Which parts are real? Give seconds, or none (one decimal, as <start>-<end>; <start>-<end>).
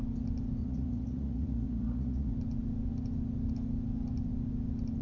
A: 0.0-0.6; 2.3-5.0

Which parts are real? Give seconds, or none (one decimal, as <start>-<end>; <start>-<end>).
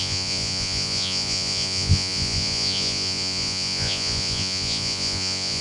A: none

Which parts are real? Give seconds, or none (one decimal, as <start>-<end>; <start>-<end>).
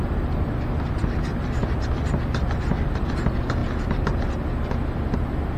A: 0.0-5.6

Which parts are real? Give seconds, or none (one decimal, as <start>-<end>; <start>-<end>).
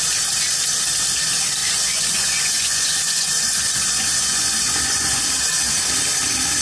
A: 0.0-1.6; 5.2-6.6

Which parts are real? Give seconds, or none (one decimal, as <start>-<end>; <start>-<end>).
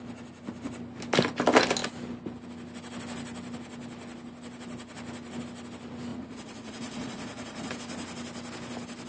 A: 0.0-6.1; 7.7-9.1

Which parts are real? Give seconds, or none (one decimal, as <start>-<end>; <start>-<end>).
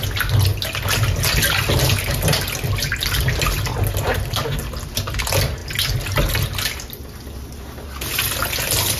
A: 0.0-9.0